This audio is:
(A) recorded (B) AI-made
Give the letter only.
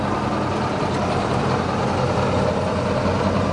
A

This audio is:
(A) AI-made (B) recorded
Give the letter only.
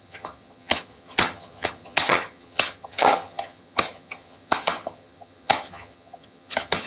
A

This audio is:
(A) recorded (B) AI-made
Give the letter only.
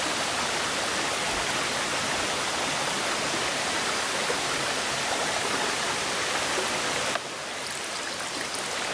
A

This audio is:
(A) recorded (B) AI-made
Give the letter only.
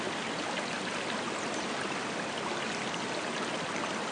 A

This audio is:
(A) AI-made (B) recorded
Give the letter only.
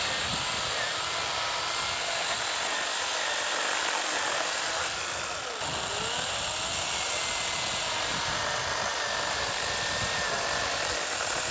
B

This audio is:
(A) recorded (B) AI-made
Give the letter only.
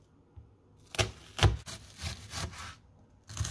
A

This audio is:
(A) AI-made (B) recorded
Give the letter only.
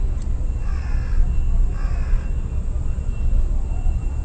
B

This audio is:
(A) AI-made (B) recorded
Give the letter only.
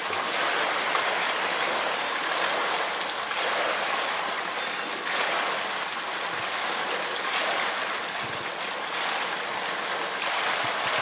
B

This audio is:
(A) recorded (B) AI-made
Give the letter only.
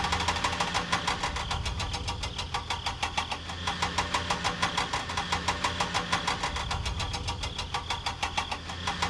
A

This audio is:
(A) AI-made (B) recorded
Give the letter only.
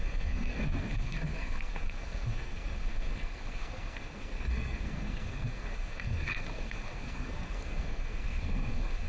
A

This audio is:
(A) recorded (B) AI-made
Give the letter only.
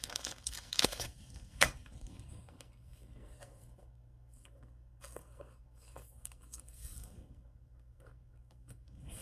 B